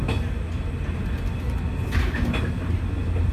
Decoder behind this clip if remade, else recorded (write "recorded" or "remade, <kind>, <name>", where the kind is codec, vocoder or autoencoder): recorded